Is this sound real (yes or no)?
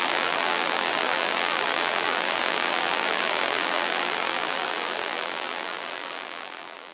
no